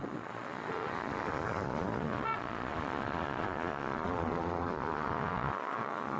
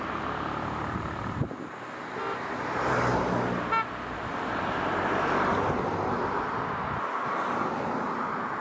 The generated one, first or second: first